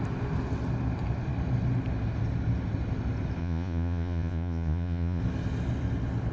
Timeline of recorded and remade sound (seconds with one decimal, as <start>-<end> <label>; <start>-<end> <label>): 0.0-3.4 recorded; 3.4-5.2 remade; 5.2-6.3 recorded